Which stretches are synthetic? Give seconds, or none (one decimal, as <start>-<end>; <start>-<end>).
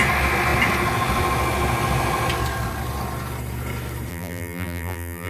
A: 4.1-5.3